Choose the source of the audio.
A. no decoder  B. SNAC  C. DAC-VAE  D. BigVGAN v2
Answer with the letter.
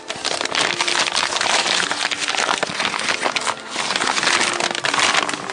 A